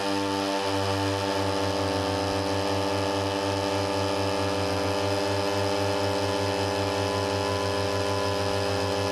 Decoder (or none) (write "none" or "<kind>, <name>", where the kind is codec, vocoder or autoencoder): none